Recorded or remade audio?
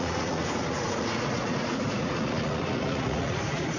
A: remade